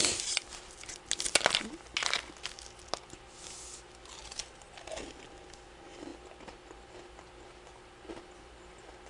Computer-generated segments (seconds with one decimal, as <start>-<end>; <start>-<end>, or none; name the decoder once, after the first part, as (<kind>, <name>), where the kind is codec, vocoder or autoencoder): none